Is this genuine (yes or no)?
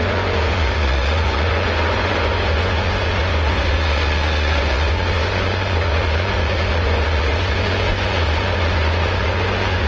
no